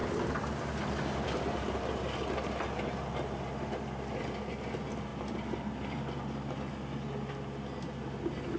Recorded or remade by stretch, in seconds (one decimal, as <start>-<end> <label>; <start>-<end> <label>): 0.0-8.6 recorded